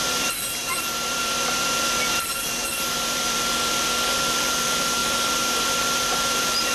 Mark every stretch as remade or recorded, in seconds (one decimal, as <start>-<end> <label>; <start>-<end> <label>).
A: 0.0-6.7 remade